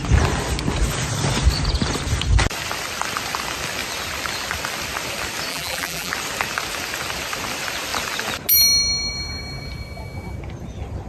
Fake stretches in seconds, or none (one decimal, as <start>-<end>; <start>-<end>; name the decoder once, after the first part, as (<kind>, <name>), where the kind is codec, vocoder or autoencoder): 5.5-6.1 (vocoder, BigVGAN v2)

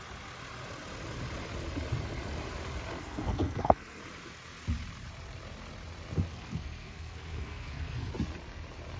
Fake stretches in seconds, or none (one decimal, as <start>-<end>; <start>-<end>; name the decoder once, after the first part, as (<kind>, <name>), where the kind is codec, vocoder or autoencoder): 3.0-4.0 (codec, SNAC); 6.3-8.1

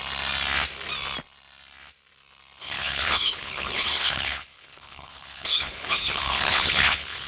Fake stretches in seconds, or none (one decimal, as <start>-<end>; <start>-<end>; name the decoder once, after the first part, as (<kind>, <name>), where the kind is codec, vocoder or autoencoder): 2.6-7.3 (codec, HILCodec)

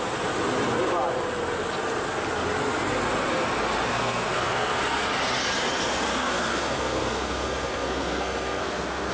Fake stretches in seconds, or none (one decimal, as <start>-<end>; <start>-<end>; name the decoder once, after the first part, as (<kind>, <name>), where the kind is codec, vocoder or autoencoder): 3.9-4.8 (codec, SNAC); 6.1-9.1

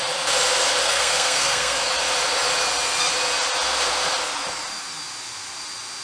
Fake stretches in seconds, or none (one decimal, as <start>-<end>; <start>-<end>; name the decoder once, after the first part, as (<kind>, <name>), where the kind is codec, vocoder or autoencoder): 0.8-1.9 (codec, SNAC)